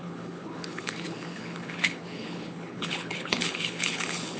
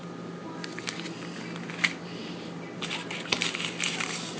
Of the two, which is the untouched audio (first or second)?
second